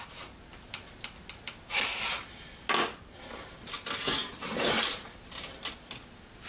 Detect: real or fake real